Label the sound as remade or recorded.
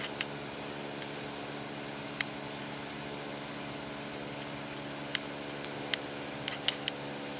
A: recorded